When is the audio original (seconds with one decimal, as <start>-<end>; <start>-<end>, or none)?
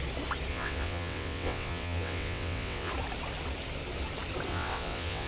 0.0-0.5; 2.9-4.5